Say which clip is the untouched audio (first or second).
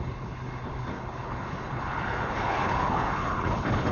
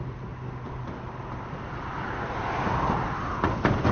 second